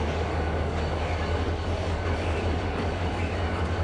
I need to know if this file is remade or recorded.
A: remade